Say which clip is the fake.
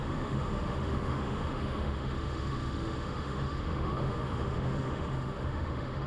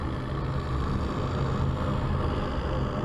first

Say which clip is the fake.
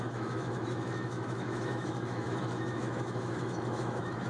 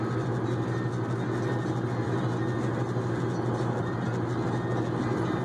first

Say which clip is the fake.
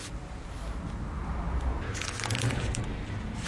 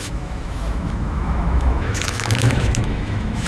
second